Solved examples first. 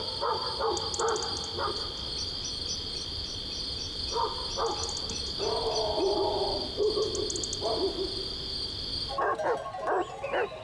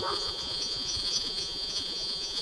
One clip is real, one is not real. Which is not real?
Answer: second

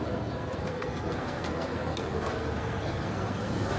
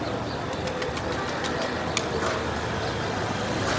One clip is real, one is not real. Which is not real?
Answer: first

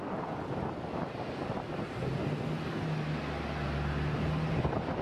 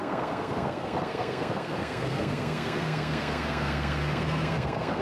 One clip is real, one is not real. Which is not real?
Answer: second